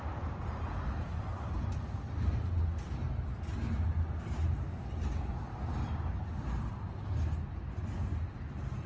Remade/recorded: recorded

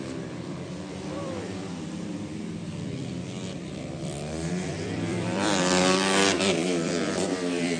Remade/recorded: remade